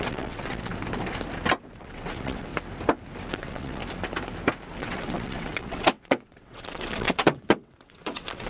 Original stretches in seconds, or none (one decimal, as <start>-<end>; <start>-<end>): 0.7-1.8; 2.5-3.3; 3.8-4.8